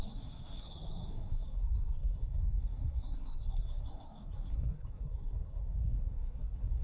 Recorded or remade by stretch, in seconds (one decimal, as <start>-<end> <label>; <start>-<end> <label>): 0.0-6.8 remade